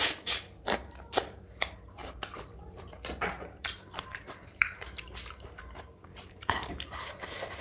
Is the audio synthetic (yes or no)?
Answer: yes